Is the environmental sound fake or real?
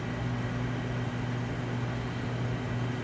real